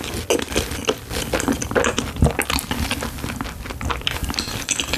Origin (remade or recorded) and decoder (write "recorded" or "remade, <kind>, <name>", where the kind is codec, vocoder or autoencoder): recorded